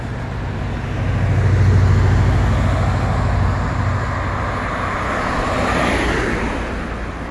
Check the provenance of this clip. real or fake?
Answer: real